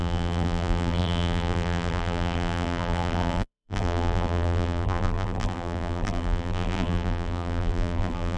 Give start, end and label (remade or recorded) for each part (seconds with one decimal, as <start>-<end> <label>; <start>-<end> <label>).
0.0-8.4 remade

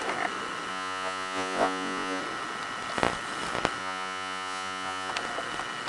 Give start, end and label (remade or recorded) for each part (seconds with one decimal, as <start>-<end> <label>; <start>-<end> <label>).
0.0-0.7 recorded; 0.7-2.2 remade; 2.2-3.8 recorded; 3.8-5.1 remade; 5.1-5.9 recorded

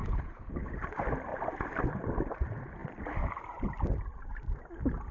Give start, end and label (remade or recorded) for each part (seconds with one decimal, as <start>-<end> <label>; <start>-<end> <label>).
0.0-0.5 remade; 0.5-5.1 recorded

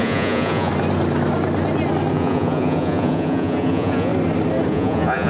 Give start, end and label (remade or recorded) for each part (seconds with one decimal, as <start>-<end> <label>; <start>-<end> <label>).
0.0-0.7 remade; 0.7-2.1 recorded; 2.1-4.1 remade; 4.1-4.7 recorded; 4.7-5.3 remade